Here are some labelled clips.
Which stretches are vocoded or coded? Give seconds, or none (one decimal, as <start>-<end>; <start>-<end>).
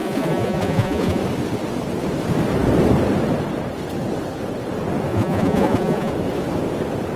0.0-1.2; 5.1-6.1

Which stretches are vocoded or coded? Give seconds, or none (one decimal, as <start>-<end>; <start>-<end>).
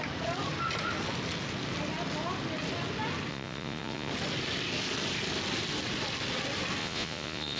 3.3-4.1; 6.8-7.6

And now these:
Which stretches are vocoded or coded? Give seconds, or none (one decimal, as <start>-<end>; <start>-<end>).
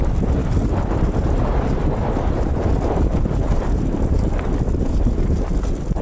none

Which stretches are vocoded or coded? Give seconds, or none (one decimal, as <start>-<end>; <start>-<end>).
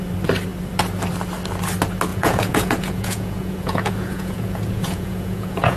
2.1-5.8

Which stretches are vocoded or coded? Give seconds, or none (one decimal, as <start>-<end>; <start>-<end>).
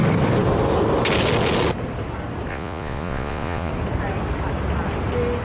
2.5-3.7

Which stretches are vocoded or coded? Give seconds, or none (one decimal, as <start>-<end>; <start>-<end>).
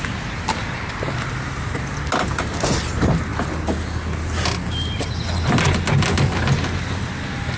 none